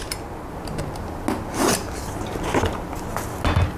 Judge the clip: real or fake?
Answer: real